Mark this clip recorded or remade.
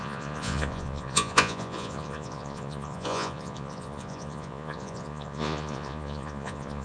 remade